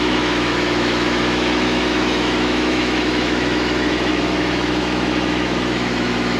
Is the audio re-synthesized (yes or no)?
yes